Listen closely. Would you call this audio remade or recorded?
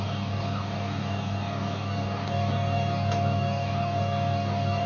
remade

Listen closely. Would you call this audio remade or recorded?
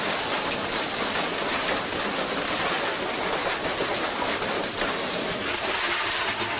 recorded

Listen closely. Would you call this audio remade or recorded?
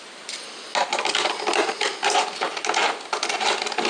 recorded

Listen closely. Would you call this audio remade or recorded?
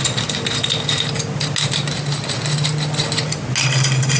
recorded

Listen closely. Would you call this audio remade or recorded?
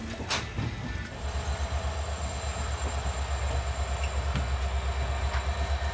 recorded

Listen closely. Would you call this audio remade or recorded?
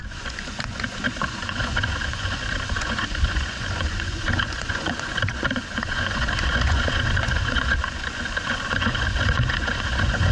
remade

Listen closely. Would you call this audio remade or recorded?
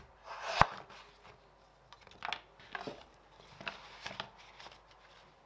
recorded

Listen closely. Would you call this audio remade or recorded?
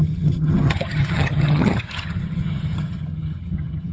remade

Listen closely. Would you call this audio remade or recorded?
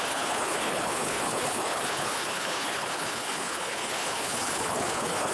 remade